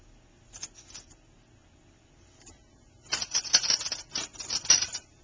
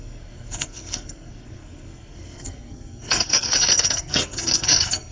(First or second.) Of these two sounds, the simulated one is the second